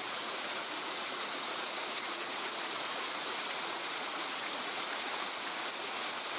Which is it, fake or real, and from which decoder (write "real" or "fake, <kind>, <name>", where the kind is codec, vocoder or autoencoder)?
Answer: fake, vocoder, Vocos